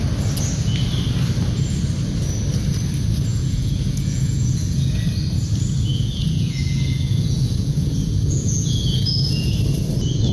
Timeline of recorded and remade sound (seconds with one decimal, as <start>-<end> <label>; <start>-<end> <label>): 0.0-3.3 recorded; 3.3-4.9 remade; 4.9-5.9 recorded; 5.9-9.5 remade; 9.5-10.3 recorded